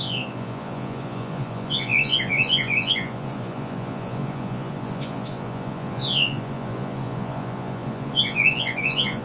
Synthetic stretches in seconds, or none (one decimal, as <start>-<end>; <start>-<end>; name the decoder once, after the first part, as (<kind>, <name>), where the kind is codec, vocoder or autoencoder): 0.0-9.2 (vocoder, Vocos)